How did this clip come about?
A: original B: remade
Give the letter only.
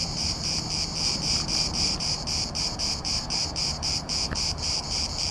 B